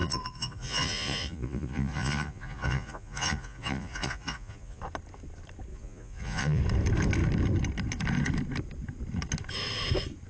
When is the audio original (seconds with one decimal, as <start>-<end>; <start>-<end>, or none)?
4.8-5.7; 6.6-10.3